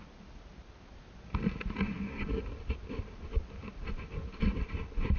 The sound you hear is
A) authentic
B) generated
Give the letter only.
A